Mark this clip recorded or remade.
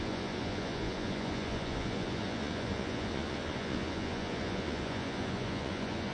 remade